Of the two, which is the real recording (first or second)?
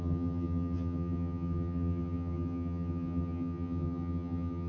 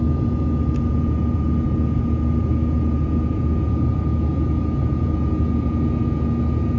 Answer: second